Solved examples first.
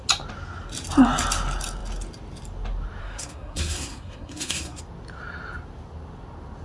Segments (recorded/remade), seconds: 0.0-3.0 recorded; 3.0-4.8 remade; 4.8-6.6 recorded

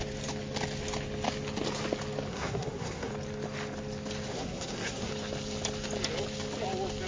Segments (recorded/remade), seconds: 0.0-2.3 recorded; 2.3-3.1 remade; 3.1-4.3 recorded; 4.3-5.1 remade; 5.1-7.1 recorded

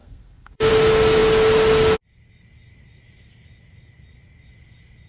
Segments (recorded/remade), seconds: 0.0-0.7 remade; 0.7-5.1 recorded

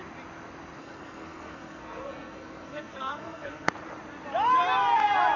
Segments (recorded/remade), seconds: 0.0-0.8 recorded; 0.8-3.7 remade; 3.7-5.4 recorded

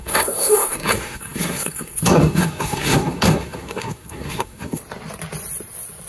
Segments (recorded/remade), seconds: 0.0-4.8 remade; 4.8-6.1 recorded

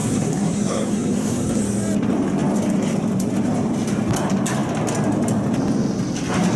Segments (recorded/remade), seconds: 0.0-1.6 remade; 1.6-6.6 recorded